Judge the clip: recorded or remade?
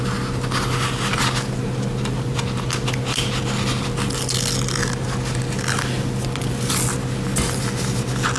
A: recorded